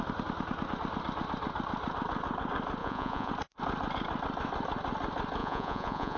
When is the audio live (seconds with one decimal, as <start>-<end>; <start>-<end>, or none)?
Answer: 0.0-2.8; 3.3-5.4